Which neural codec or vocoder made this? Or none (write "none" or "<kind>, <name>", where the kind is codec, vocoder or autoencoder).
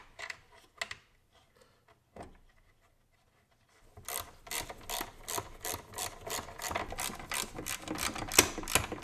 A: none